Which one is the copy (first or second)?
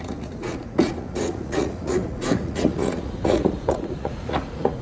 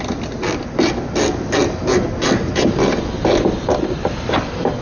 first